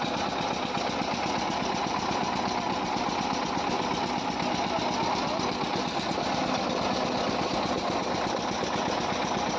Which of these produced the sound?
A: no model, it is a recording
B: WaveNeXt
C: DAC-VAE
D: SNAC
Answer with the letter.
A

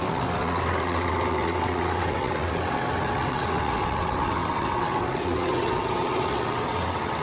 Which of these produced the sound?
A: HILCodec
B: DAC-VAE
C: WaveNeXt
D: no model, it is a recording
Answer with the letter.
C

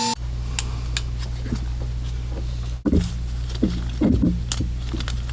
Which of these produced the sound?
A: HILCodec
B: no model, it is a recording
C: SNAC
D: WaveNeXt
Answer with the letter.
B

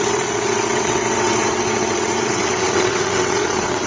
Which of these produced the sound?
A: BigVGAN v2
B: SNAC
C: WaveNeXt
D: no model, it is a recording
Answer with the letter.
C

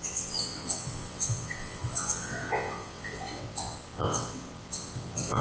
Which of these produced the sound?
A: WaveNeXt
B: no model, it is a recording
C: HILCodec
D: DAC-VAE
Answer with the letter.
A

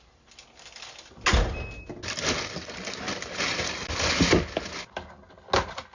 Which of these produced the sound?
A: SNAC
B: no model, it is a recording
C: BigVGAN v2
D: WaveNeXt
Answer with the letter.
B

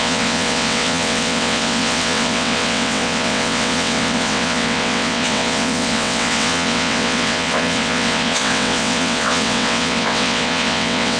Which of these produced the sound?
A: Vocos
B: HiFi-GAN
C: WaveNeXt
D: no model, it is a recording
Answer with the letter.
C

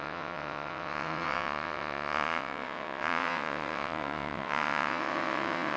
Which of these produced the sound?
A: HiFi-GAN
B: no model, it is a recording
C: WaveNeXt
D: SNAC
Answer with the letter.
C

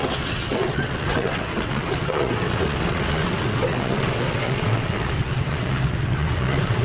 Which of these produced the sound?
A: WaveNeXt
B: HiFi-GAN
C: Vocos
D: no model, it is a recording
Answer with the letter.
A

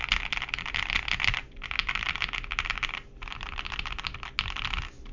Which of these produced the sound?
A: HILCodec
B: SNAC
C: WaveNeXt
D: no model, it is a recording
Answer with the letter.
D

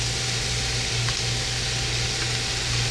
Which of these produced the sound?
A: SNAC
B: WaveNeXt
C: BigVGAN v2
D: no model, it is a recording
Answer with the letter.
D